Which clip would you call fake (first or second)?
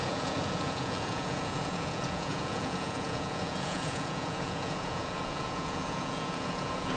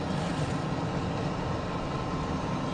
first